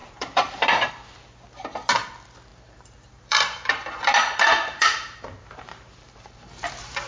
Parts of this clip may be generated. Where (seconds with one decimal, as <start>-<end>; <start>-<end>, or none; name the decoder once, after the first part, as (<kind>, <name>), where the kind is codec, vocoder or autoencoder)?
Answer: 0.0-0.9 (vocoder, BigVGAN v2); 2.5-7.1